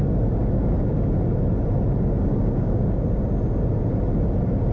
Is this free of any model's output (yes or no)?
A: yes